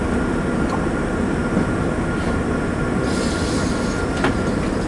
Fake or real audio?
real